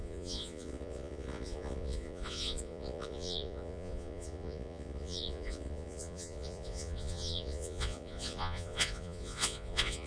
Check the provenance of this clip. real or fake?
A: fake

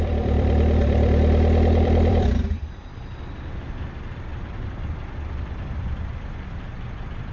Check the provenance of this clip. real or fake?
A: fake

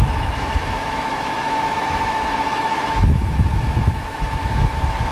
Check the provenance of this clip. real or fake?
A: fake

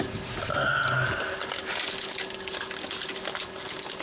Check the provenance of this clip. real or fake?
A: real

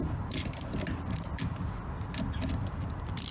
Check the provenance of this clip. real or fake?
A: real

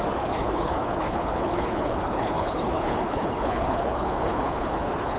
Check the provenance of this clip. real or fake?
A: fake